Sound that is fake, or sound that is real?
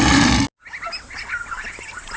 real